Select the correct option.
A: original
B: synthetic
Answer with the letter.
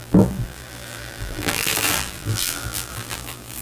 B